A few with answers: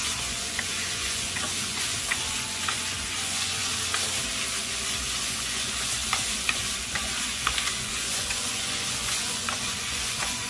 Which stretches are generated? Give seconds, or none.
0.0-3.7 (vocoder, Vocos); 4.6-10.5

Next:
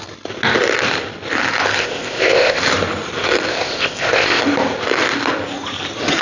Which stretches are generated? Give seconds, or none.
1.8-2.6 (codec, ZipCodec); 3.5-4.4

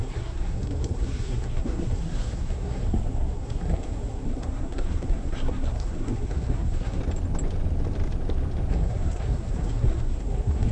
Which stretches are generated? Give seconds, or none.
0.0-7.0 (codec, SNAC); 8.7-10.7

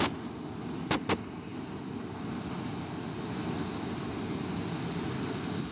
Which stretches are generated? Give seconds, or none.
none

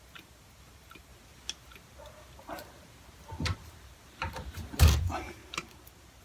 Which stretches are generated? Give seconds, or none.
0.0-1.1 (vocoder, BigVGAN v2); 4.8-5.4